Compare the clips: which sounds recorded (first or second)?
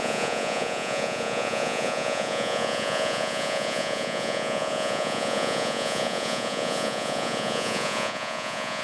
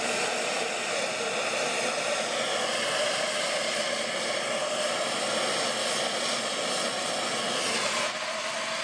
second